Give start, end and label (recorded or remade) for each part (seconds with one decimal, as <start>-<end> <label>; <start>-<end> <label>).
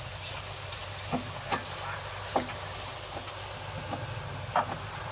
0.0-5.1 recorded